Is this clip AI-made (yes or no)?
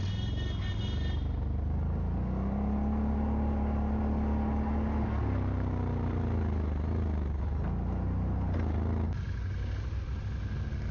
no